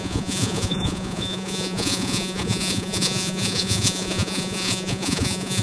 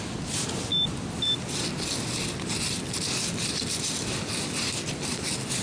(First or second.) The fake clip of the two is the first